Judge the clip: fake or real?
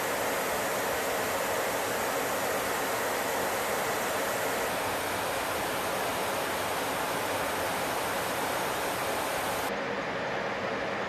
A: real